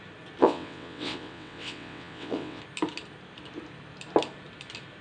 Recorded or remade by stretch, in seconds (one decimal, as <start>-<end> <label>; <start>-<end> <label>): 0.0-0.4 recorded; 0.4-2.6 remade; 2.6-5.0 recorded